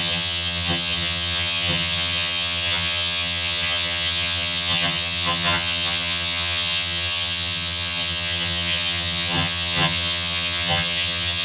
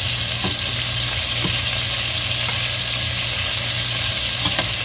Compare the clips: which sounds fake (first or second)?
first